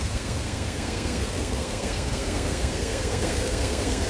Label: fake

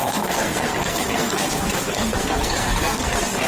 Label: fake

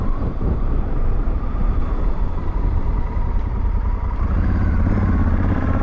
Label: fake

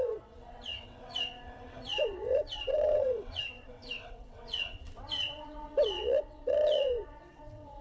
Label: fake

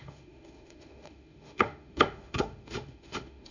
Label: fake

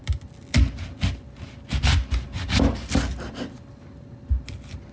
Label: real